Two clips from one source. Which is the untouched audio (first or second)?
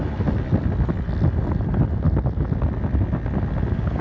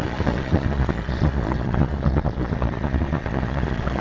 first